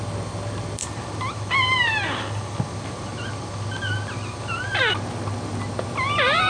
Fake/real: fake